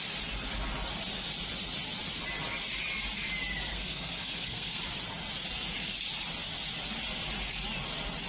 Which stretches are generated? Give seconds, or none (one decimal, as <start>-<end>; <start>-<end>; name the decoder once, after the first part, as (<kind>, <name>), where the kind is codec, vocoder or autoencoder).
3.7-4.8 (codec, SNAC)